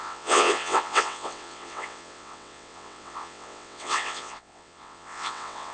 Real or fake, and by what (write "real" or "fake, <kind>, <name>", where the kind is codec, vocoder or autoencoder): fake, vocoder, WaveNeXt